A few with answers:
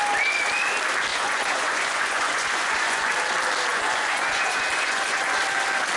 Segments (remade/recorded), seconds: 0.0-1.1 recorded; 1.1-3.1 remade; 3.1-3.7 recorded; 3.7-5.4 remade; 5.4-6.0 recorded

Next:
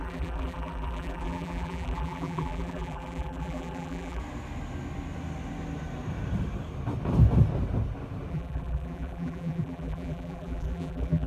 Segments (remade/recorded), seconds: 0.0-4.2 remade; 4.2-8.3 recorded; 8.3-11.3 remade

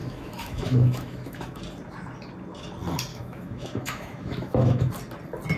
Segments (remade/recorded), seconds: 0.0-1.6 remade; 1.6-3.1 recorded; 3.1-4.9 remade; 4.9-5.6 recorded

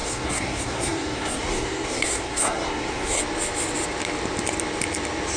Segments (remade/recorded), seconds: 0.0-3.2 remade; 3.2-5.4 recorded

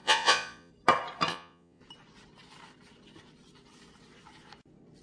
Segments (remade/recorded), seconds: 0.0-0.7 remade; 0.7-1.3 recorded; 1.3-1.8 remade; 1.8-5.0 recorded

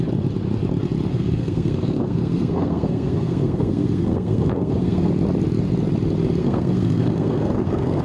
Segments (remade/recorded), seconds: 0.0-1.1 recorded; 1.1-5.1 remade; 5.1-6.4 recorded; 6.4-8.0 remade